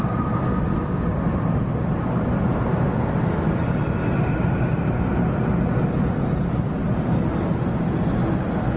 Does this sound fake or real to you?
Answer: real